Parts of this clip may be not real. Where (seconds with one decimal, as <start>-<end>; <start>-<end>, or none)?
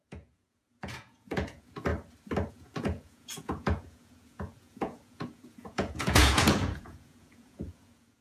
0.0-1.9; 2.5-8.2